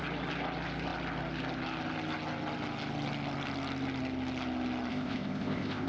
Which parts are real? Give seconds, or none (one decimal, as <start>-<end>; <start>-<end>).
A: 0.0-4.9